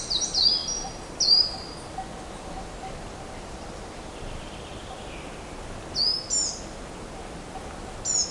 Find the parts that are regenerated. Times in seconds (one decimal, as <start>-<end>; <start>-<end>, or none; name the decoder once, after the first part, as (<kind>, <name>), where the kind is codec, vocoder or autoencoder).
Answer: 0.6-4.9 (vocoder, BigVGAN v2); 6.1-6.6